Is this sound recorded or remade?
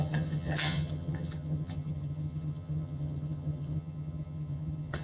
remade